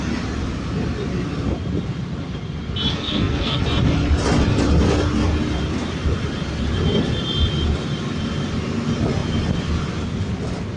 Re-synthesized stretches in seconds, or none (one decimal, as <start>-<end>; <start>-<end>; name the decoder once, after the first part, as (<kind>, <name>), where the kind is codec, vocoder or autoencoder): 2.9-3.6 (codec, SNAC)